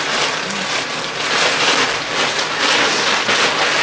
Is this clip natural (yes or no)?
yes